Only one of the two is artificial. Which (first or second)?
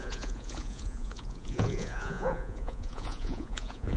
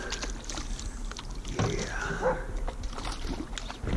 first